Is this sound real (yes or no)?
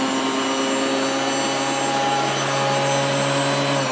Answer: yes